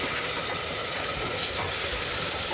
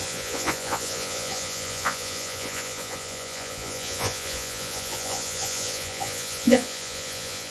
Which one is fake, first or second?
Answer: second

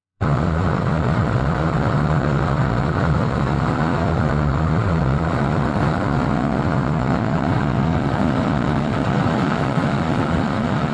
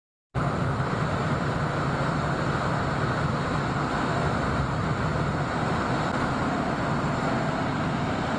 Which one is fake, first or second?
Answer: first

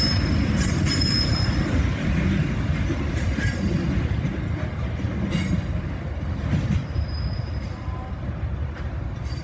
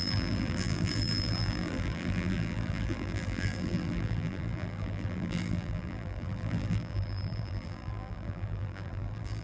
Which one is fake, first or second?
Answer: second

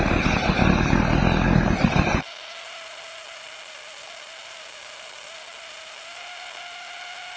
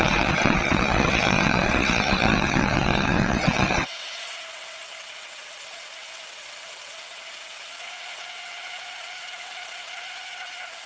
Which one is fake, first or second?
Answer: second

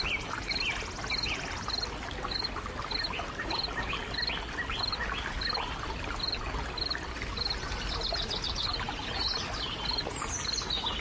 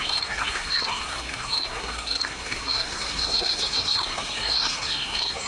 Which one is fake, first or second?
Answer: second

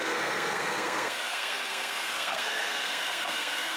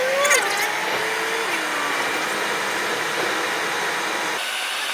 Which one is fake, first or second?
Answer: first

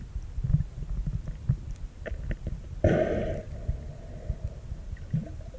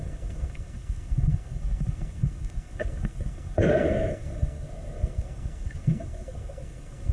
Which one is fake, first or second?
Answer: second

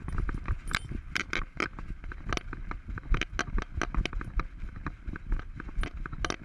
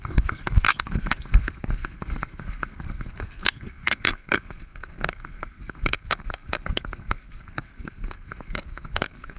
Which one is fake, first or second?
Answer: second